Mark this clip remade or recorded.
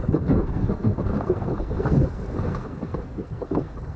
remade